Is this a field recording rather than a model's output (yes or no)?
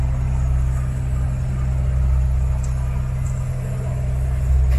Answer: yes